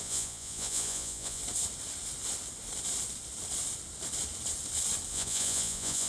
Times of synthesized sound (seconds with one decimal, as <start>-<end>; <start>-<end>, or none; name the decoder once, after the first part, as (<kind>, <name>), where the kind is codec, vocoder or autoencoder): 0.0-1.4 (vocoder, Vocos); 5.1-6.1